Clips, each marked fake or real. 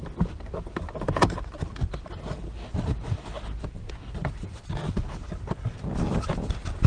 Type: real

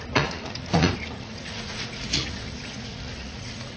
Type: fake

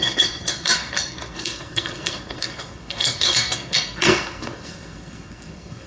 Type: fake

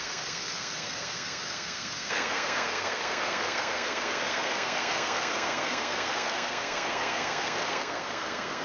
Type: fake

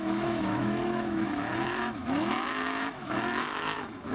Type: fake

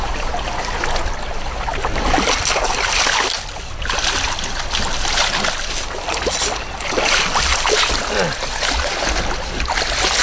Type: real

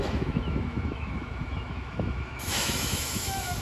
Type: fake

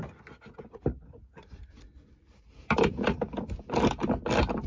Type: real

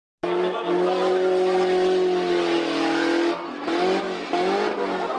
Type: real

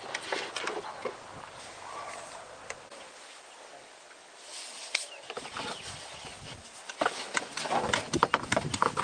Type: real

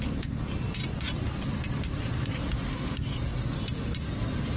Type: real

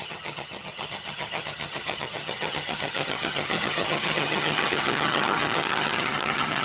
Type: fake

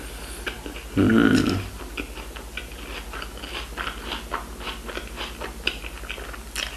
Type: real